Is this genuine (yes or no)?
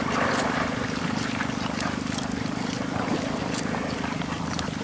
no